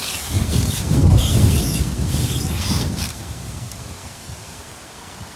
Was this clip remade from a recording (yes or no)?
yes